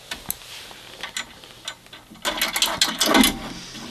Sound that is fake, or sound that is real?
real